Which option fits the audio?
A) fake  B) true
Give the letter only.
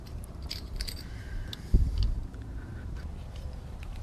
A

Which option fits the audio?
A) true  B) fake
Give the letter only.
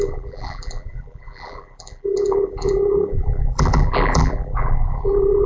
B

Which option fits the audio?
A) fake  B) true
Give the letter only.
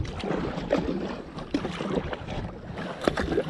B